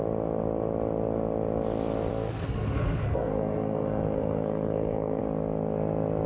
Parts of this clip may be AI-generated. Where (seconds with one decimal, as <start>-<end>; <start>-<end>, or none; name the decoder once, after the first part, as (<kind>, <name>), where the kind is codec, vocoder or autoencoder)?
2.1-5.2 (codec, SNAC)